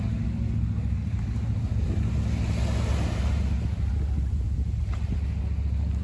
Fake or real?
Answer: real